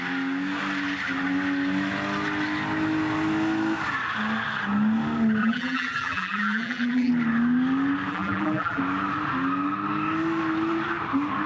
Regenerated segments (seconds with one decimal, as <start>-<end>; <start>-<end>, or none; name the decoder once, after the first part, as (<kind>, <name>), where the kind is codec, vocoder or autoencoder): 5.4-7.1 (vocoder, BigVGAN v2); 8.1-8.8